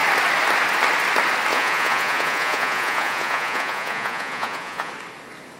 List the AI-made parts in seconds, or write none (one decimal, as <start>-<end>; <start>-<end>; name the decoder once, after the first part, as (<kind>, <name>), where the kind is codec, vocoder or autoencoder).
1.5-4.9 (vocoder, Vocos)